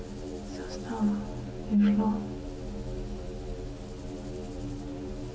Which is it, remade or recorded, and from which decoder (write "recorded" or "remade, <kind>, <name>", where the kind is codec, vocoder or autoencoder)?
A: recorded